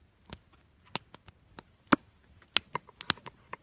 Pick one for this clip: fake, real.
real